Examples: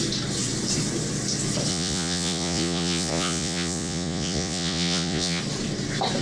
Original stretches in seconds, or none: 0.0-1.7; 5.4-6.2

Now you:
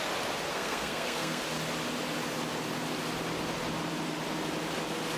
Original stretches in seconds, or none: 0.0-0.5; 1.4-5.2

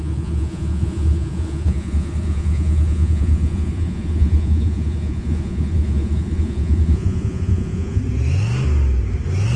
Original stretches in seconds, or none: 8.0-9.6

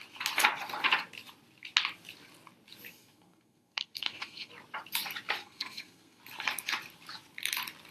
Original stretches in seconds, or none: 0.0-2.9; 4.5-5.4; 6.2-7.9

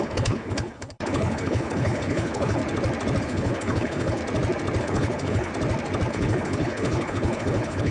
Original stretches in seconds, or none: 2.6-3.2; 4.2-4.8; 5.5-6.1

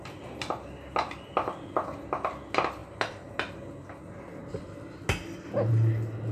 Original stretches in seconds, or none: 0.0-6.3